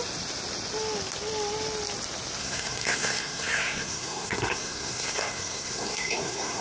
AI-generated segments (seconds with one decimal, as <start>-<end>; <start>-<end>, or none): 2.4-6.6